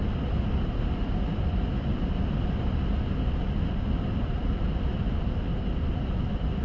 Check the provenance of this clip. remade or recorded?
recorded